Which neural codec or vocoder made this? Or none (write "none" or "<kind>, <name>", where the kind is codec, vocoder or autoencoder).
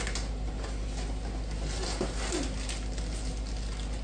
none